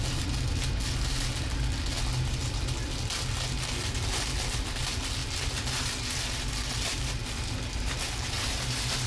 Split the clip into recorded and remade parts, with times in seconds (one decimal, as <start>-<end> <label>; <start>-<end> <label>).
0.0-9.1 recorded